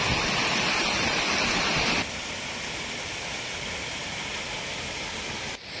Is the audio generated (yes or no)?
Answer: no